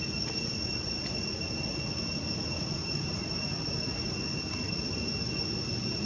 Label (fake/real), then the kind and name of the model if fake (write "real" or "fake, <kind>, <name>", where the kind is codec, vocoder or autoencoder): real